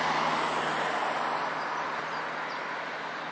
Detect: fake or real real